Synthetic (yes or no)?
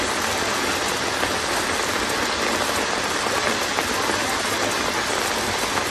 no